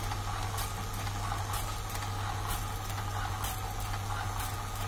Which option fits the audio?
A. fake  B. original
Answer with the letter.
B